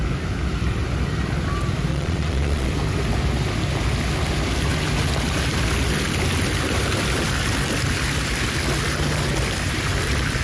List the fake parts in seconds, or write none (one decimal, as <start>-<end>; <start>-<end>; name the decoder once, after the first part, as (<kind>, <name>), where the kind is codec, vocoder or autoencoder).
1.9-2.7 (vocoder, Vocos)